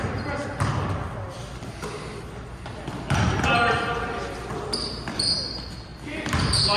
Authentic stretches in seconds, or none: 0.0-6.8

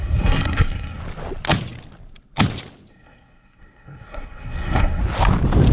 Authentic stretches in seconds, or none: 1.0-2.9; 5.0-5.7

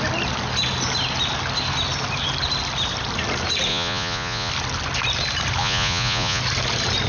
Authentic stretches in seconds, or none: 0.0-3.7; 4.5-5.6; 6.4-7.1

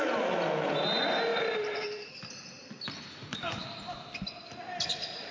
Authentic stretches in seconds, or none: 0.0-1.3; 2.7-3.3; 4.0-5.3

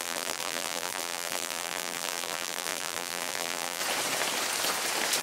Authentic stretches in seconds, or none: 3.8-5.2

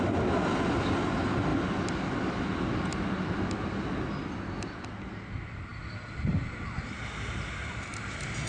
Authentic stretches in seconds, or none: 0.0-8.5

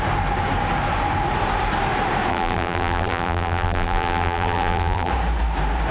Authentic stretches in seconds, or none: 0.0-2.3; 5.1-5.9

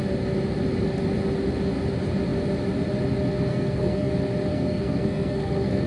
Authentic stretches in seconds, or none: 0.0-3.5; 4.1-4.5